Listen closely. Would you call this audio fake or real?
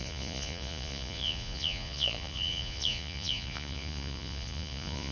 fake